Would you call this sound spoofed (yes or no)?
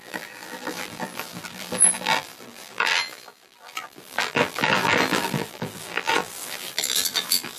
yes